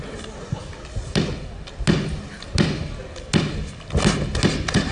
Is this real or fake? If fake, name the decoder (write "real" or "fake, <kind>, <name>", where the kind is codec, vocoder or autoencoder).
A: real